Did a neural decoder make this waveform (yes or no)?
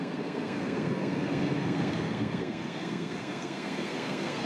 yes